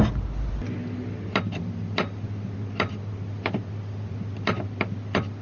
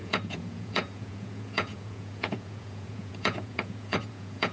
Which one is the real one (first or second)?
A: first